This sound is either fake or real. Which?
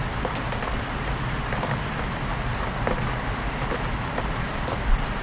real